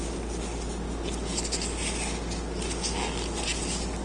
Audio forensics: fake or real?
real